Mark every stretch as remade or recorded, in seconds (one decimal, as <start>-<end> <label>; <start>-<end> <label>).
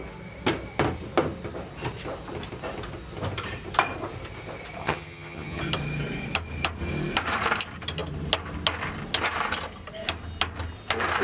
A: 0.0-4.8 recorded; 4.8-5.6 remade; 5.6-11.2 recorded